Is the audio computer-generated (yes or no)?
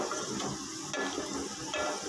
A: no